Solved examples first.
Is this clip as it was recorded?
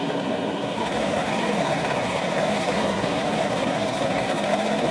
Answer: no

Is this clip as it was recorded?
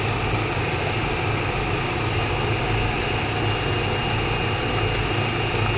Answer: yes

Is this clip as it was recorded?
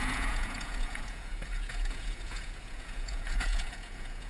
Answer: no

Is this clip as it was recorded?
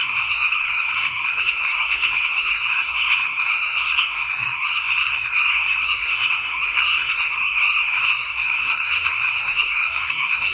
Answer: no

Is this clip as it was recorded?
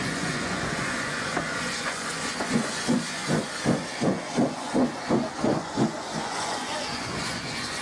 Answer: no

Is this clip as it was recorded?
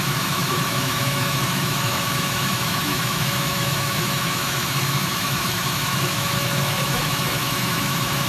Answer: no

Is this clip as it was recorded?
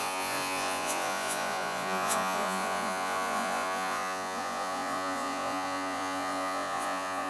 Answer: no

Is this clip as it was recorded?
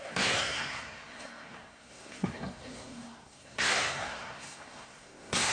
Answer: no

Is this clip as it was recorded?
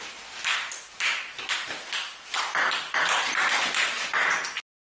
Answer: yes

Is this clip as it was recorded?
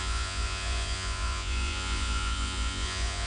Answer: no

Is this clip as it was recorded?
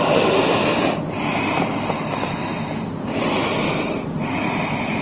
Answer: yes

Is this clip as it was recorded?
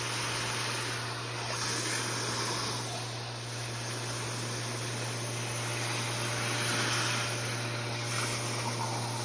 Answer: yes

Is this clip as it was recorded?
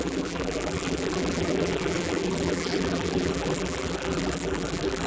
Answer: no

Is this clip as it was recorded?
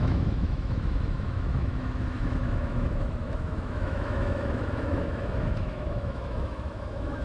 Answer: no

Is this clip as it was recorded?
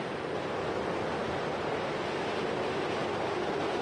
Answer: yes